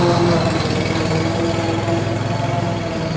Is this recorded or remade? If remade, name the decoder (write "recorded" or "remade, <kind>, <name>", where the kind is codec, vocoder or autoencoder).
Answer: recorded